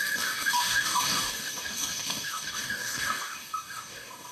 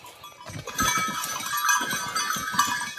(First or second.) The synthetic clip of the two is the first